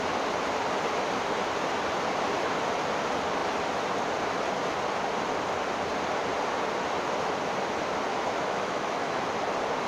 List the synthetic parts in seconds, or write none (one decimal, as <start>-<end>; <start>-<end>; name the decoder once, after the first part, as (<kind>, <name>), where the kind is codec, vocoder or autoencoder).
8.1-9.2 (autoencoder, DAC-VAE)